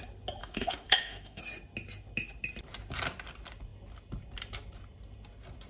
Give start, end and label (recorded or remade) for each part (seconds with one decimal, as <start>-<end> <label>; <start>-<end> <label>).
0.0-0.4 recorded; 0.4-1.4 remade; 1.4-5.7 recorded